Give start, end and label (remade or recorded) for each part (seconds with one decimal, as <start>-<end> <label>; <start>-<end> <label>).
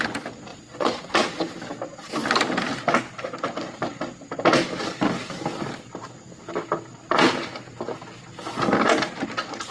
0.0-0.5 recorded; 0.5-1.1 remade; 1.1-9.7 recorded